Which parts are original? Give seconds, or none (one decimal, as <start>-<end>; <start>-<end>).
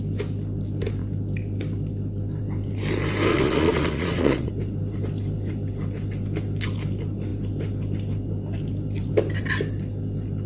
0.0-3.3; 4.5-10.5